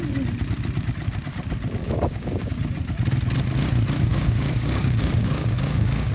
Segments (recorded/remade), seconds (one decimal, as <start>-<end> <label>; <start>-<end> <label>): 0.0-1.8 recorded; 1.8-2.5 remade; 2.5-4.1 recorded; 4.1-6.1 remade